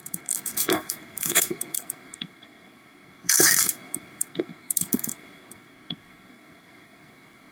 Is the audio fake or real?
fake